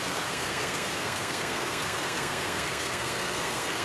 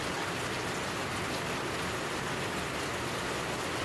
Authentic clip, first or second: second